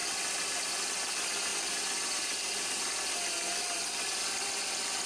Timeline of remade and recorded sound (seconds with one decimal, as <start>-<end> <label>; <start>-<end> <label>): 0.0-5.1 recorded